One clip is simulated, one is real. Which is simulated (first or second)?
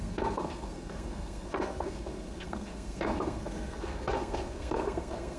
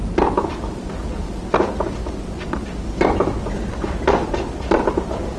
first